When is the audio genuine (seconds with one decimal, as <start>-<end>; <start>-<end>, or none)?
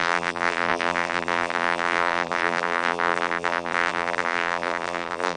none